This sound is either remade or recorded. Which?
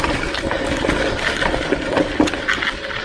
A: recorded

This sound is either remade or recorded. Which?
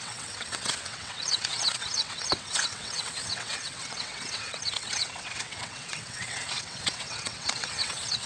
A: remade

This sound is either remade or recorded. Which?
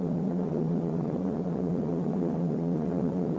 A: remade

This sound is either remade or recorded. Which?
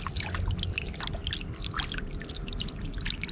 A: recorded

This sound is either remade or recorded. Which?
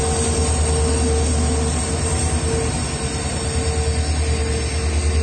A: recorded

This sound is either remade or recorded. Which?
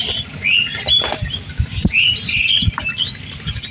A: recorded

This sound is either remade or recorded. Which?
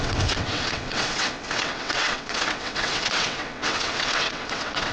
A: remade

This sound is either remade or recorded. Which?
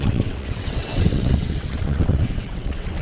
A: remade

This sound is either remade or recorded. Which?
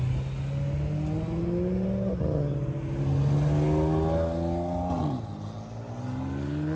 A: recorded